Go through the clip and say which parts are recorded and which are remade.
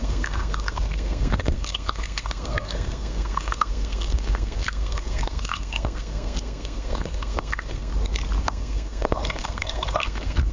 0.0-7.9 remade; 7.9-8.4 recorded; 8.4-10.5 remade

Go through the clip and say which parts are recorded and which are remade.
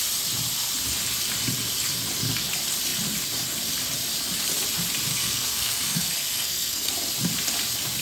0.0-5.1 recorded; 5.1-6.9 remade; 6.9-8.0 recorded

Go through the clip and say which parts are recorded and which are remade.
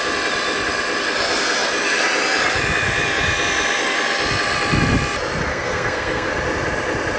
0.0-5.5 recorded; 5.5-6.3 remade; 6.3-7.2 recorded